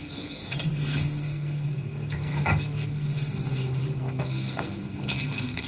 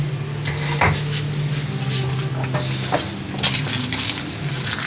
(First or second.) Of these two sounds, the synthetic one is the first